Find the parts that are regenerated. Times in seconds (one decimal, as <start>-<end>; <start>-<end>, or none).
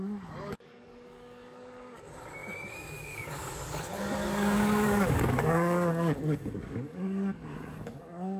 0.0-8.4